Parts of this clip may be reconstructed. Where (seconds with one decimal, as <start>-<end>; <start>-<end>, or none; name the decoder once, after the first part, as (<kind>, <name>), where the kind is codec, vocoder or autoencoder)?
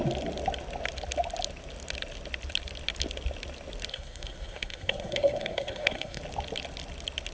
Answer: 3.9-6.2 (codec, SNAC)